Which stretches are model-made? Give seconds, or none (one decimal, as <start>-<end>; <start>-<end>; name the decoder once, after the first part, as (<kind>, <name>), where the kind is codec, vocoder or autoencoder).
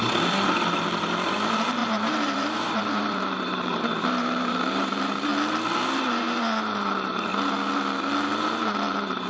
0.0-5.3 (vocoder, BigVGAN v2); 6.2-7.3; 8.9-9.3